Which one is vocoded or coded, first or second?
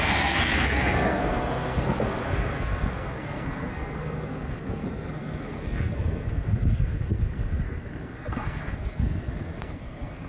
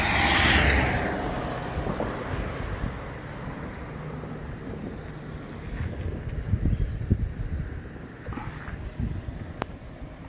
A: first